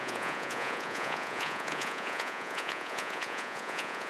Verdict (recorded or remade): remade